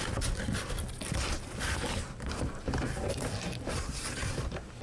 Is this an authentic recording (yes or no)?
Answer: yes